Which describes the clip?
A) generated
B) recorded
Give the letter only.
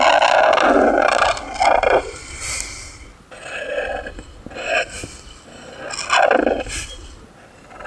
B